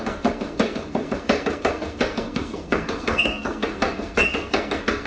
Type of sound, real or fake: fake